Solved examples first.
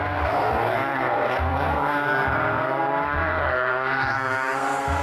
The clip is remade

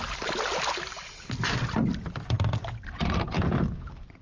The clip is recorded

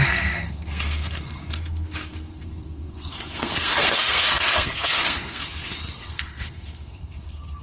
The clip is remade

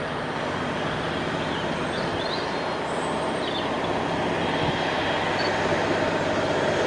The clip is recorded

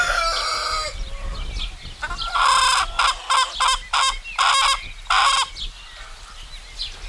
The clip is recorded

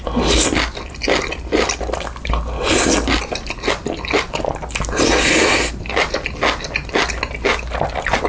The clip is recorded